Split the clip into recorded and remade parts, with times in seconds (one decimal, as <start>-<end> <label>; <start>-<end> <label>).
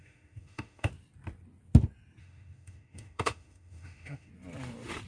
0.0-0.9 remade; 0.9-2.2 recorded; 2.2-4.3 remade; 4.3-5.1 recorded